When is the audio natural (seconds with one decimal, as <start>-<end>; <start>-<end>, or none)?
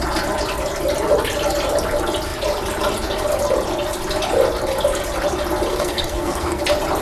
0.0-5.7; 6.6-7.0